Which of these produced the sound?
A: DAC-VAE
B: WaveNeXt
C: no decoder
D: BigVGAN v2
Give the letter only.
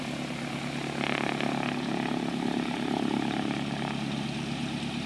C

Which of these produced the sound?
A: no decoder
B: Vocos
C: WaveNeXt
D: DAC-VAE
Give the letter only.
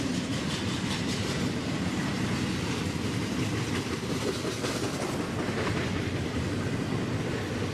A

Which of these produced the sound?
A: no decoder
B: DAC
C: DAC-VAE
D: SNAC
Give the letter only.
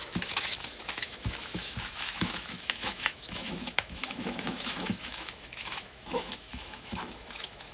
C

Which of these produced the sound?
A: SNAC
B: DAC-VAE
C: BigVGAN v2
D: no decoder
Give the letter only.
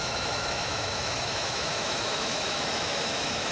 B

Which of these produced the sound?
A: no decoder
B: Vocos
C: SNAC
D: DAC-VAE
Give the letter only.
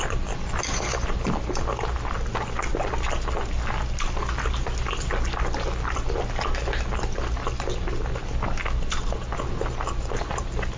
A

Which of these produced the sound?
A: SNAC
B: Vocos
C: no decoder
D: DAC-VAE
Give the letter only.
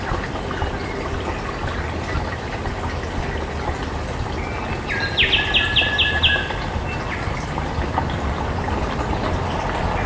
C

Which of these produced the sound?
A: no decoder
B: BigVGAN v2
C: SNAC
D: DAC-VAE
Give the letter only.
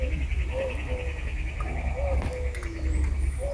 A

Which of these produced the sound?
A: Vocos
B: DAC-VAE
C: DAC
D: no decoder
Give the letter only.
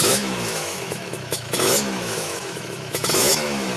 B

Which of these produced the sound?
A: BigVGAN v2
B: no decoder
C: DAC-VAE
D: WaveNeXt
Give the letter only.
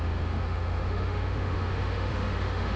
C